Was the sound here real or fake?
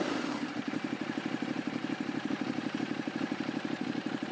fake